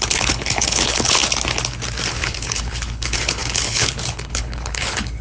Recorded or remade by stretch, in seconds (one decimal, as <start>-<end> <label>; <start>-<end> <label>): 0.0-1.2 remade; 1.2-2.1 recorded; 2.1-5.2 remade